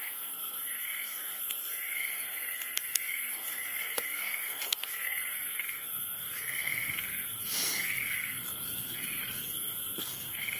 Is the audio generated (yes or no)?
yes